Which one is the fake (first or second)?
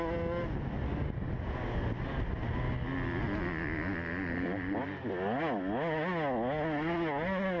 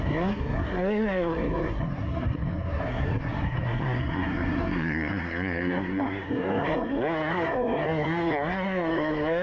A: second